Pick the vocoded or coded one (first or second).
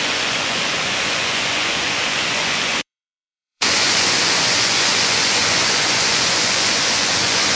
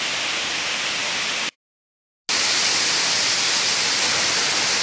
first